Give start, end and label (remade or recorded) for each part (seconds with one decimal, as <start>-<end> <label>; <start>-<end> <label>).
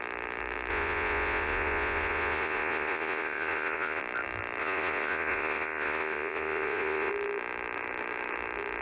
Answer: 0.0-0.7 recorded; 0.7-4.0 remade; 4.0-4.6 recorded; 4.6-7.1 remade; 7.1-8.8 recorded